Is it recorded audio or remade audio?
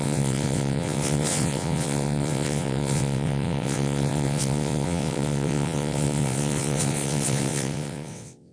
remade